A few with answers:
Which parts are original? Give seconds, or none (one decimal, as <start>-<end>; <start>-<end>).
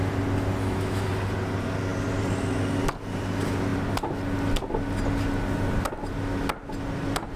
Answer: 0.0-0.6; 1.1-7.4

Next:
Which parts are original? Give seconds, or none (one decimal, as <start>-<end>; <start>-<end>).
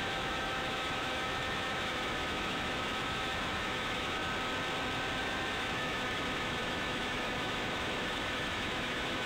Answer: 4.2-5.2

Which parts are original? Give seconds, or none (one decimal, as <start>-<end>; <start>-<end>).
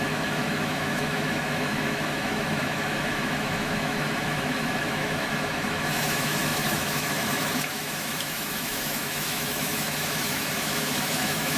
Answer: none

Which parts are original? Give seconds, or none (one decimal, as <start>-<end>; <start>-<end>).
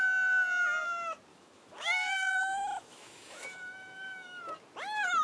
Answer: 0.0-1.3; 4.4-5.2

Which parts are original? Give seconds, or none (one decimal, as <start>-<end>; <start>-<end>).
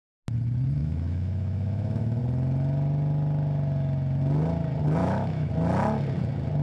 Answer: 0.0-0.8; 2.2-5.0; 5.5-6.6